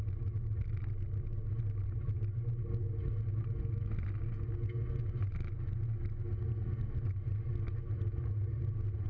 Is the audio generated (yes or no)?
no